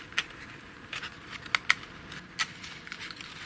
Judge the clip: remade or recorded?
recorded